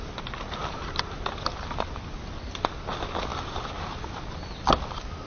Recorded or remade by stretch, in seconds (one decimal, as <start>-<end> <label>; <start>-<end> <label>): 0.0-5.3 recorded